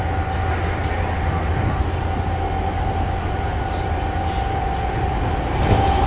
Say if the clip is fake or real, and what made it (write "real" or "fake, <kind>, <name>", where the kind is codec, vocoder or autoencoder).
real